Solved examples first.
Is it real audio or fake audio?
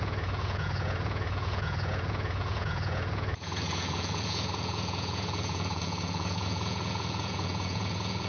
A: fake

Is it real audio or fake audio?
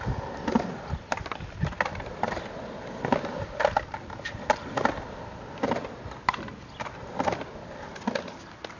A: real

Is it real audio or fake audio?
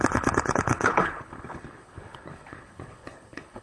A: fake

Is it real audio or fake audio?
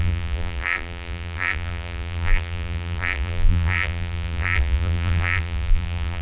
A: fake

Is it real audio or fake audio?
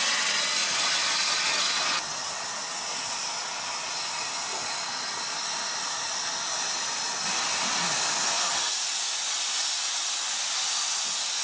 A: real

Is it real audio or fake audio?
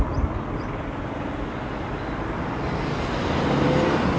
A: real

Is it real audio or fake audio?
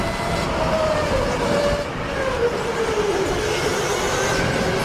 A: real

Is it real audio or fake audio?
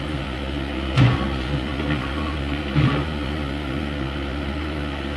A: fake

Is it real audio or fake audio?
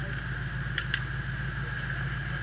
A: real